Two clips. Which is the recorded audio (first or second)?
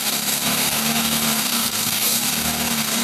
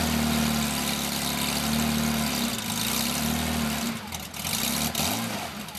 second